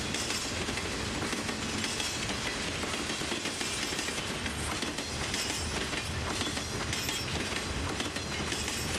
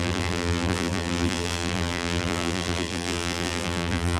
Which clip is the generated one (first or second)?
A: second